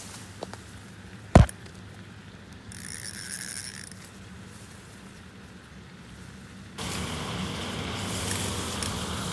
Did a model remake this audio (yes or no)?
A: yes